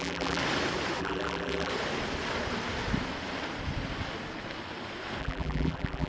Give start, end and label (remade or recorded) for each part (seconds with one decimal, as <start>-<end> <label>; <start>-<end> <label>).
0.0-0.4 remade; 0.4-1.0 recorded; 1.0-1.7 remade; 1.7-5.2 recorded; 5.2-6.1 remade